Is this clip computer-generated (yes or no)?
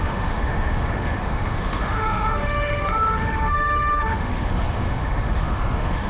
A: yes